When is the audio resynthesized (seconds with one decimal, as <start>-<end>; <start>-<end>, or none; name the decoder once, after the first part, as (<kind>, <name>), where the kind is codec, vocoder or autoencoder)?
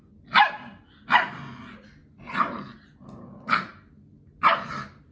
2.0-2.6 (vocoder, BigVGAN v2)